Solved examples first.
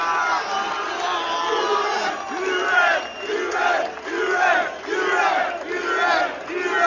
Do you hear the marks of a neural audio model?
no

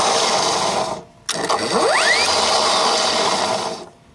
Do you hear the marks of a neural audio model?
no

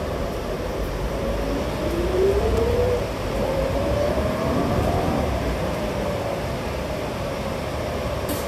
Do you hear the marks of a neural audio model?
yes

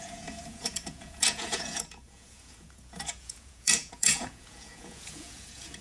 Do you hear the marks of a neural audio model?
yes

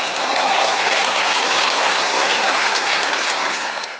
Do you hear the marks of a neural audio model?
yes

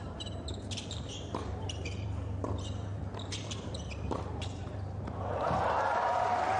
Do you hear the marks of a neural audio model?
yes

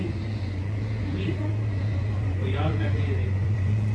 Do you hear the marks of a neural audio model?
yes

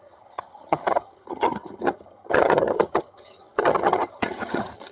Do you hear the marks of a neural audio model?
yes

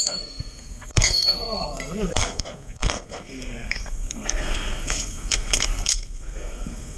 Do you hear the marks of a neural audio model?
yes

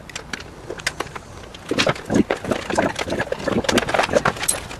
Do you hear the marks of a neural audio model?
no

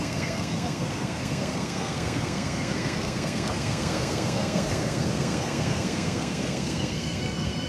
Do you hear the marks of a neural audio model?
yes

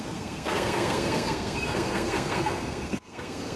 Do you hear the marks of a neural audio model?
yes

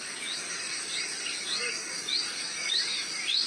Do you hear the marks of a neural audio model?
yes